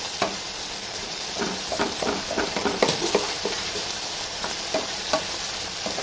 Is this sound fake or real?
fake